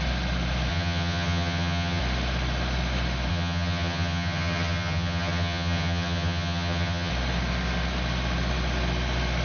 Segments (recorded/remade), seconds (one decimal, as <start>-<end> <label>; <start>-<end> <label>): 0.0-0.7 recorded; 0.7-2.0 remade; 2.0-3.3 recorded; 3.3-7.1 remade; 7.1-9.4 recorded

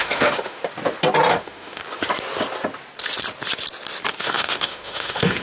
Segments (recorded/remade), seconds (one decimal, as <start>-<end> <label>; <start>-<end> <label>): 0.0-0.6 remade; 0.6-1.3 recorded; 1.3-1.8 remade; 1.8-4.2 recorded; 4.2-5.4 remade

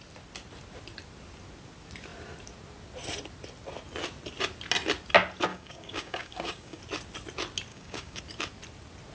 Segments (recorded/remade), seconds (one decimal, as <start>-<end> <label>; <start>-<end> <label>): 0.0-5.5 recorded; 5.5-6.8 remade; 6.8-7.7 recorded; 7.7-8.2 remade; 8.2-9.1 recorded

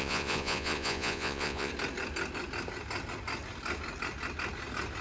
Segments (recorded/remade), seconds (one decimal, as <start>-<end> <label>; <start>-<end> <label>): 0.0-1.7 remade; 1.7-5.0 recorded

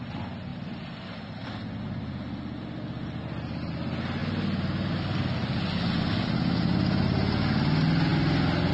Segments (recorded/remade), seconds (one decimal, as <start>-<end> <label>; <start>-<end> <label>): 0.0-8.7 recorded